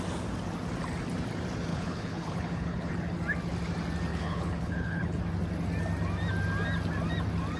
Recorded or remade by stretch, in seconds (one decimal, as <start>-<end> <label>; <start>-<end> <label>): 0.0-1.7 recorded; 1.7-2.9 remade; 2.9-4.1 recorded; 4.1-5.2 remade; 5.2-7.6 recorded